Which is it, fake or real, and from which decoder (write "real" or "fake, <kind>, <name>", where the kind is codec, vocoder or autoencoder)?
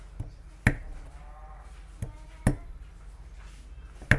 real